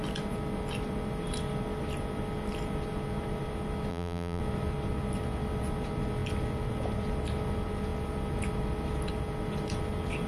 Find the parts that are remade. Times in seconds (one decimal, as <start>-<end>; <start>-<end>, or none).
3.9-4.4